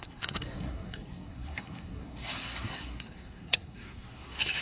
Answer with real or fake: fake